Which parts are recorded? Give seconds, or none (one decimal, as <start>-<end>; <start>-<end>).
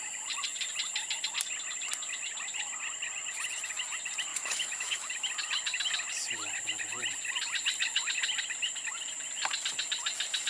0.0-4.3; 5.1-10.5